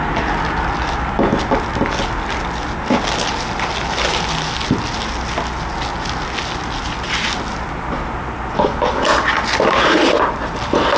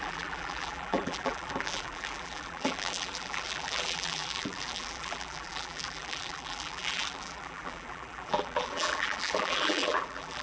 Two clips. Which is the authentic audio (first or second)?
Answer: first